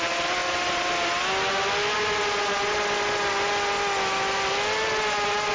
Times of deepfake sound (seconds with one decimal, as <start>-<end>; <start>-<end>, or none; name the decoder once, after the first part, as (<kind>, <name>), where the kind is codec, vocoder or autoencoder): none